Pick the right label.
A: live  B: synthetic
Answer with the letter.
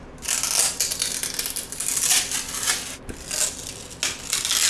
A